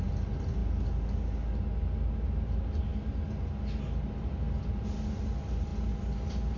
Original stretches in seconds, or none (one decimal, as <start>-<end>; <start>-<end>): 0.0-6.6